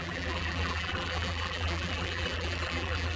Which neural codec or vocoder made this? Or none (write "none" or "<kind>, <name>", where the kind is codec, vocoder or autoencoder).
vocoder, BigVGAN v2